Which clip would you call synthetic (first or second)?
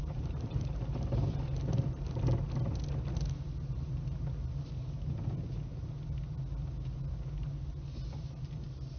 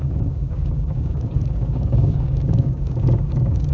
second